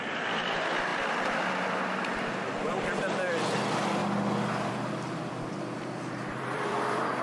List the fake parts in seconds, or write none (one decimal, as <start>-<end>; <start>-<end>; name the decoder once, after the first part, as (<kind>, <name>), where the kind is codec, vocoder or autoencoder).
0.0-4.0 (vocoder, BigVGAN v2); 4.7-7.2